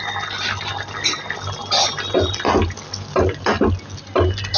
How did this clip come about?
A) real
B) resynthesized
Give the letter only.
A